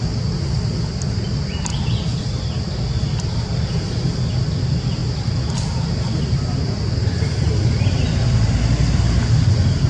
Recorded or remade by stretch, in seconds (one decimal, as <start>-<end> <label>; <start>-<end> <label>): 0.0-9.9 recorded